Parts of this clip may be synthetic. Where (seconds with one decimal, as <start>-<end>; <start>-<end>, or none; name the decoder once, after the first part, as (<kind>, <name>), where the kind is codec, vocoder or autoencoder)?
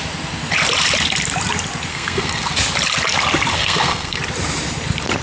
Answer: 1.9-2.5 (codec, SNAC); 3.5-4.2